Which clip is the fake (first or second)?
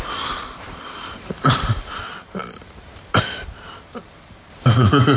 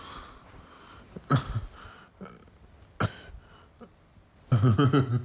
first